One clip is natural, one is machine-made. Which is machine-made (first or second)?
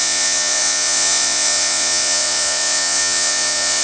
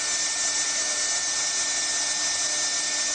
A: first